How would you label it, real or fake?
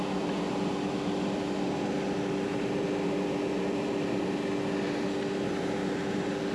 real